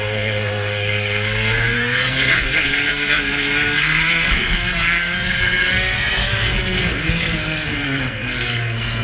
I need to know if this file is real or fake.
fake